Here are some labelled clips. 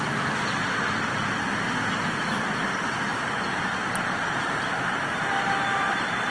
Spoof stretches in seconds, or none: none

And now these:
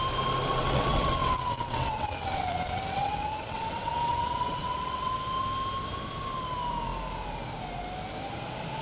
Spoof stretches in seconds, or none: 0.5-5.1 (vocoder, WaveNeXt)

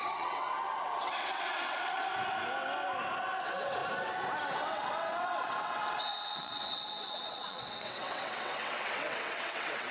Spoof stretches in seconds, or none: 0.0-0.5 (vocoder, WaveNeXt); 1.0-2.1; 3.4-3.8; 4.5-9.9

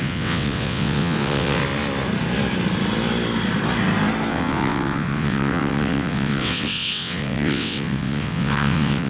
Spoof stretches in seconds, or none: 0.0-1.6 (vocoder, WaveNeXt); 4.3-9.1

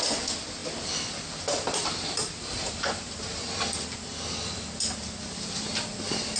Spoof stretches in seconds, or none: none